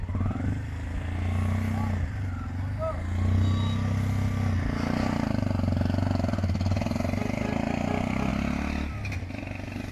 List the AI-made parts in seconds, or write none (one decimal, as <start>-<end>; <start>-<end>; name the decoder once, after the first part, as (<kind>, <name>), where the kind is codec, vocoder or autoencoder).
none